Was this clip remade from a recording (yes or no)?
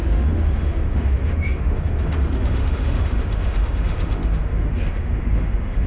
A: yes